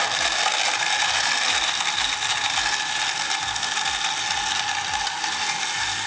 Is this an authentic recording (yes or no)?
yes